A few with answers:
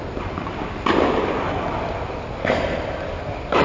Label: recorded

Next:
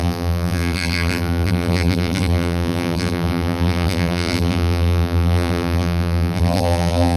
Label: remade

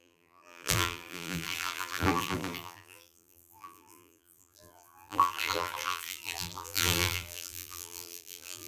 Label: remade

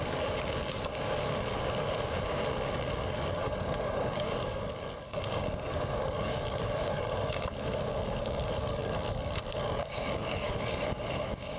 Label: remade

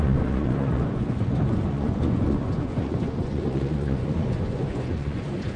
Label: remade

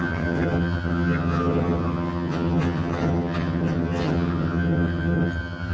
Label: remade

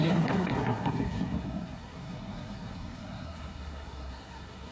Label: remade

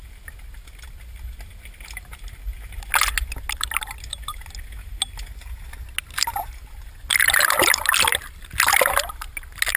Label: recorded